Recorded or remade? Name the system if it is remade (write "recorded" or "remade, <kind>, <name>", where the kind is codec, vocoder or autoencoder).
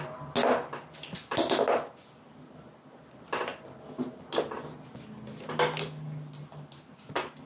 recorded